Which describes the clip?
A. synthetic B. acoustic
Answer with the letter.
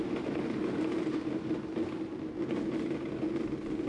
B